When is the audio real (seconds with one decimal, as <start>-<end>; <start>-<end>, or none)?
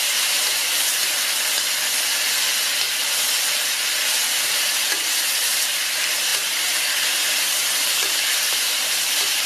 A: 0.6-4.7